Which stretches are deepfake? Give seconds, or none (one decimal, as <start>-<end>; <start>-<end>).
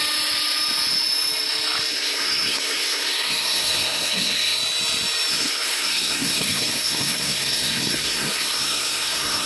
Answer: 1.9-4.6; 5.3-9.5